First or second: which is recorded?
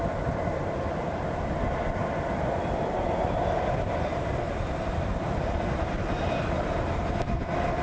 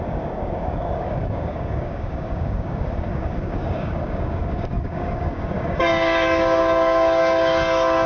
first